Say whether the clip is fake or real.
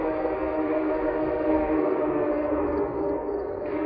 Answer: fake